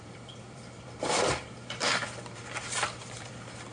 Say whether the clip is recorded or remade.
remade